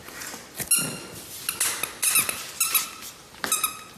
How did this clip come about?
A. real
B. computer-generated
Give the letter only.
A